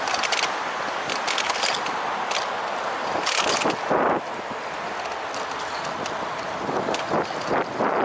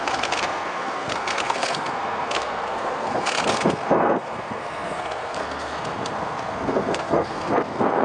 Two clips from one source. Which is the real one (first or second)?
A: first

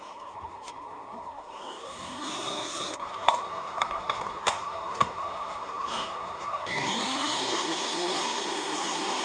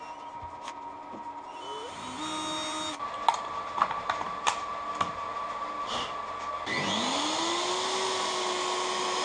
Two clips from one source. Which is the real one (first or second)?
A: second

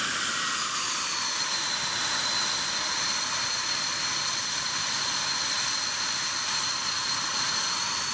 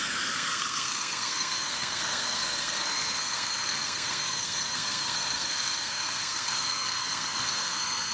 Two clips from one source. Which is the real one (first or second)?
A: first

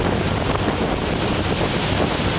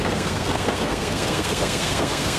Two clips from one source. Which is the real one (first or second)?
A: first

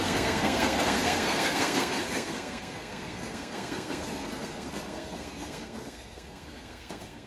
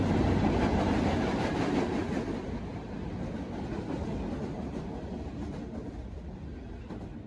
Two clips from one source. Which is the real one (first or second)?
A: second